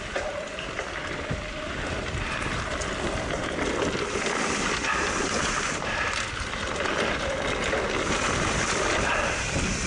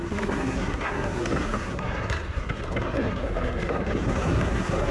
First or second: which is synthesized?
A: second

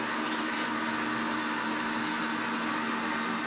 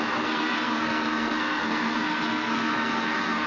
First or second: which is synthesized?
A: second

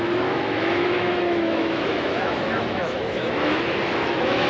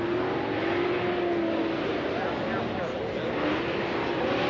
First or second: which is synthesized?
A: first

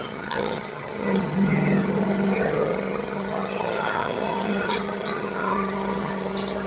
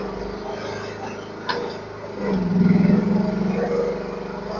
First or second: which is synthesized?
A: first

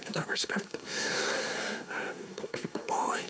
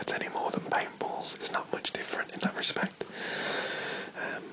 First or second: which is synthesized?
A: first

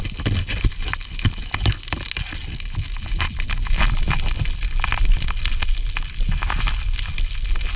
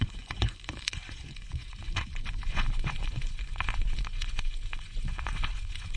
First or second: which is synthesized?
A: second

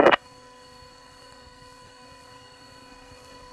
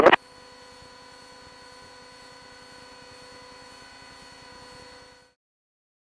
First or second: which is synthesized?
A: first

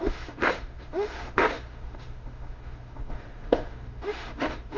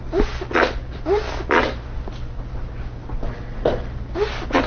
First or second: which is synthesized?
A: first